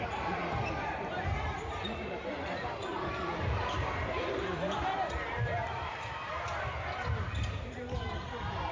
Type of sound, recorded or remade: remade